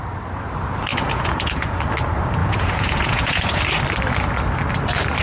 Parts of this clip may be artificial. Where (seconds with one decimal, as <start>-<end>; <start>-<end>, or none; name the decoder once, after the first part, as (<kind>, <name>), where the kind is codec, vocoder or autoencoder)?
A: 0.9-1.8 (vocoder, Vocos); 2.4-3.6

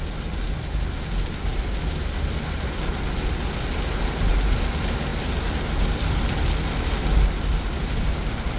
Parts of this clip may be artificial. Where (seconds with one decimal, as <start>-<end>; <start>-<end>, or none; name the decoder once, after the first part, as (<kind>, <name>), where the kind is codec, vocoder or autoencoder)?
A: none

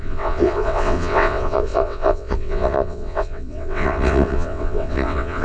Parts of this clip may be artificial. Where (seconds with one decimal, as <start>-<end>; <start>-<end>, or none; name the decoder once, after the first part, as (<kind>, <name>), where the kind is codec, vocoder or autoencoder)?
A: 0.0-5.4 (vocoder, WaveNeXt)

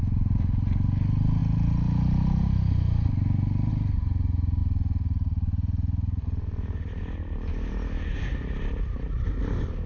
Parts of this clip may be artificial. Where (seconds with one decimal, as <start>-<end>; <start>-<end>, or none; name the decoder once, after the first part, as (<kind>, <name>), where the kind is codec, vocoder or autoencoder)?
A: none

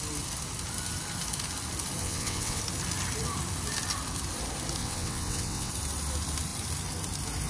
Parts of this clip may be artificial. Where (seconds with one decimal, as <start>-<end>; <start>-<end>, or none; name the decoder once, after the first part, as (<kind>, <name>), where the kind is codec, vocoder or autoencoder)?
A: 2.0-2.6 (vocoder, WaveNeXt); 4.8-5.7

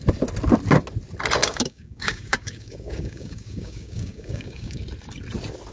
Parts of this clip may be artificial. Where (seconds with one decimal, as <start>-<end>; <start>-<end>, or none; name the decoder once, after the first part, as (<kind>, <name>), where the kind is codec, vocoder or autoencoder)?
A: 1.4-4.8 (codec, DAC)

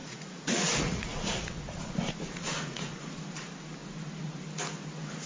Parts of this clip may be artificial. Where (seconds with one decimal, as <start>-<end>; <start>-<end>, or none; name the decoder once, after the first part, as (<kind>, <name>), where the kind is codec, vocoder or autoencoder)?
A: 0.0-3.2 (vocoder, Vocos)

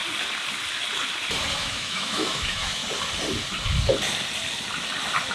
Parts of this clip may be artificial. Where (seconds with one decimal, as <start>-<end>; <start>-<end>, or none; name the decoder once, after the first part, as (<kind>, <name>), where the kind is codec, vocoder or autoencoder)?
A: 1.6-2.8 (autoencoder, DAC-VAE)